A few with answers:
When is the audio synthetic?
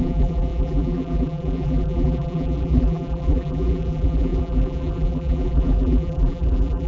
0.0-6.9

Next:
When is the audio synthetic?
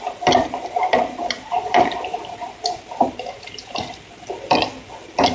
1.0-4.2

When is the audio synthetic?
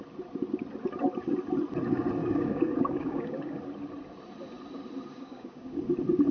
2.2-3.6; 5.1-5.8